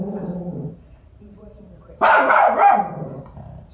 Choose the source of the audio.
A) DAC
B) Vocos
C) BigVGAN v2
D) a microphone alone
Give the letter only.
C